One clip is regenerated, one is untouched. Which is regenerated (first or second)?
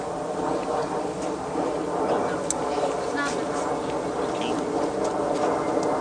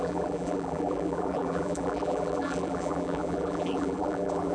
second